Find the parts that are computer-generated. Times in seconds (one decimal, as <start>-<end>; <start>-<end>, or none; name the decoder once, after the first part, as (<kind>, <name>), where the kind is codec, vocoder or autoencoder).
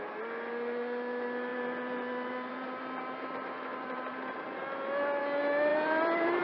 1.5-2.5 (vocoder, BigVGAN v2); 5.7-6.4